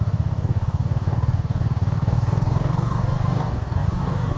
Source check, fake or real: fake